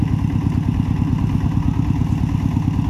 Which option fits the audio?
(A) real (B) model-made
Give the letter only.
A